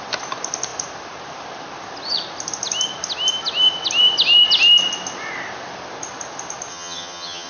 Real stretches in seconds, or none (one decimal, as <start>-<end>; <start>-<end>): 0.0-6.7